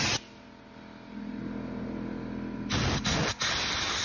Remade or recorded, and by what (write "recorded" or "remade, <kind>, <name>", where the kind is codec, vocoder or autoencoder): recorded